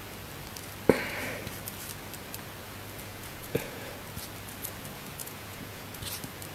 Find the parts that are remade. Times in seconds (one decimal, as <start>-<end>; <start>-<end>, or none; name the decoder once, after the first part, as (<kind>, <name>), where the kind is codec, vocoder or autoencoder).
3.1-3.9 (vocoder, Vocos); 5.2-6.0